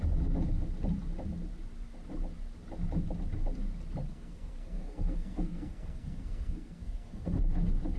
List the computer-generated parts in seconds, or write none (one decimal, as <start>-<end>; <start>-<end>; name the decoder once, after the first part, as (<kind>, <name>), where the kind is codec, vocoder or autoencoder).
4.1-7.4 (codec, SNAC)